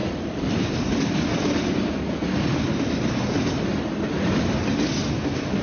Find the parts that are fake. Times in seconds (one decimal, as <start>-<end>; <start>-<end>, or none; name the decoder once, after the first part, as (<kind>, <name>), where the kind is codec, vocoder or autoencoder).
none